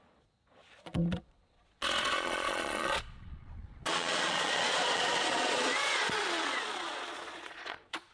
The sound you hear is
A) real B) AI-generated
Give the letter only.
B